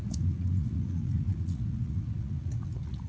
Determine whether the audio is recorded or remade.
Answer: remade